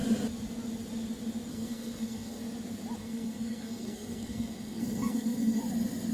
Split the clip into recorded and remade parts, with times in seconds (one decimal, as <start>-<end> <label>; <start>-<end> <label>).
0.0-1.5 recorded; 1.5-2.4 remade; 2.4-3.0 recorded; 3.0-5.6 remade; 5.6-6.1 recorded